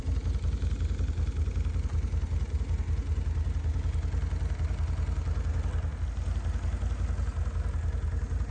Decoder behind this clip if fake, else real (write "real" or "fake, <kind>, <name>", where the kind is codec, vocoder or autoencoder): real